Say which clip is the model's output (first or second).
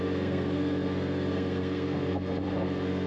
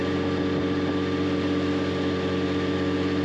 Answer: first